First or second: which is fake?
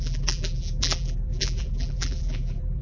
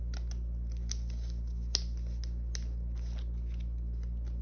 first